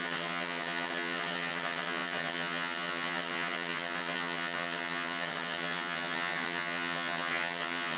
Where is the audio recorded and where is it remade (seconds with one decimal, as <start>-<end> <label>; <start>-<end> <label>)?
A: 0.0-8.0 remade